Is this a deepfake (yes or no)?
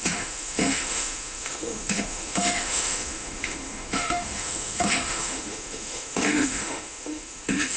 yes